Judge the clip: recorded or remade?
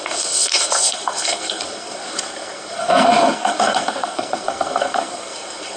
remade